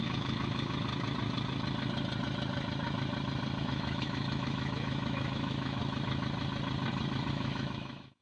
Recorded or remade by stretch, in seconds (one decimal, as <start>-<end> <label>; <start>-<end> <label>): 0.0-0.9 remade; 0.9-3.6 recorded; 3.6-5.8 remade; 5.8-7.3 recorded; 7.3-8.2 remade